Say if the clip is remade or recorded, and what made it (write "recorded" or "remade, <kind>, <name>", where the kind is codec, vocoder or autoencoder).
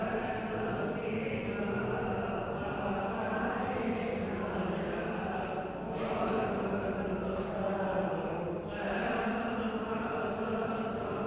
recorded